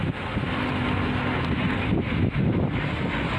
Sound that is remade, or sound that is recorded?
recorded